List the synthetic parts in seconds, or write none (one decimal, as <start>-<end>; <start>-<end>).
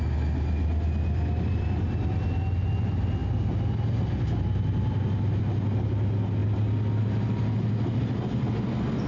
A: none